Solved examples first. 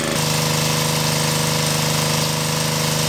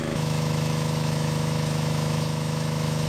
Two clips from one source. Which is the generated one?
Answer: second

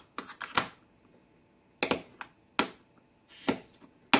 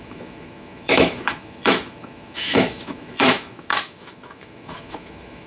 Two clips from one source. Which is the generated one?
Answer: second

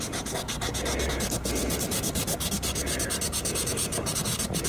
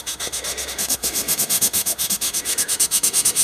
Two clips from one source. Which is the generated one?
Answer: second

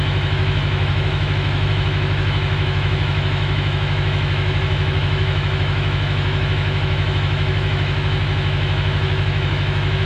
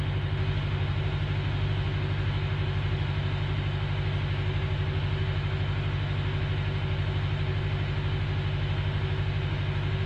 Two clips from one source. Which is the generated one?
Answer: first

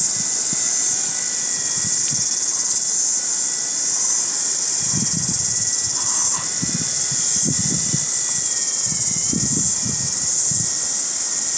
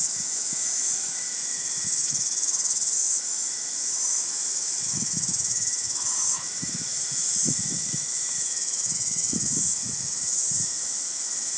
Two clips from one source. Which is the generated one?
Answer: second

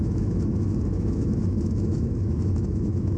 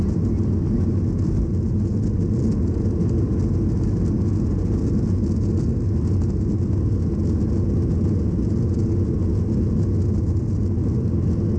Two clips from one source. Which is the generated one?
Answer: first